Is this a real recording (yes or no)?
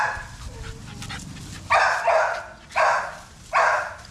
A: yes